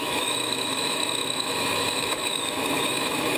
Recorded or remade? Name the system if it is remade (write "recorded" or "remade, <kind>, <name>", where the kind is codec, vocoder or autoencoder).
remade, autoencoder, DAC-VAE